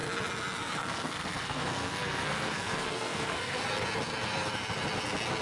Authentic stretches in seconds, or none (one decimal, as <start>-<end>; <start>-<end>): 0.0-0.6; 3.6-5.4